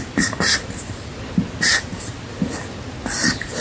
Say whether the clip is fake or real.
real